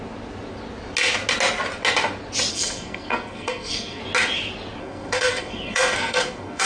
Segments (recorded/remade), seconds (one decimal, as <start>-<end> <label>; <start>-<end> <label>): 0.0-2.5 recorded; 2.5-4.0 remade; 4.0-4.8 recorded; 4.8-6.7 remade